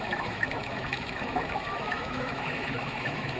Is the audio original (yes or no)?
no